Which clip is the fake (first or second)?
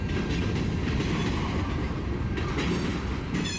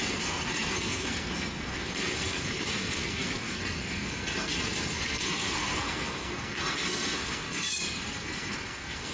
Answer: second